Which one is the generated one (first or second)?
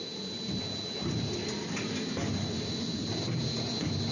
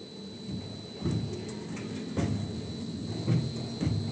first